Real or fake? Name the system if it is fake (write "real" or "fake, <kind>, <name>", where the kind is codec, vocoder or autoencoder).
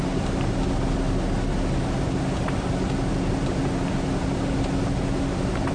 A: real